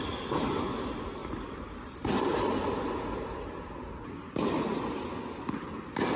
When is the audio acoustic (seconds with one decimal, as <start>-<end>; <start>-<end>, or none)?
0.0-6.2